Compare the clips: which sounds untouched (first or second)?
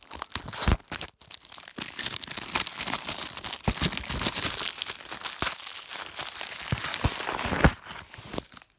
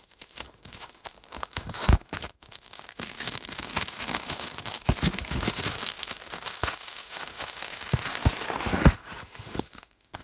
first